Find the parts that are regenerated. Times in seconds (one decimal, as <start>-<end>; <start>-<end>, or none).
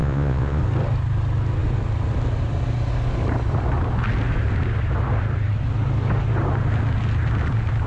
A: 0.0-0.6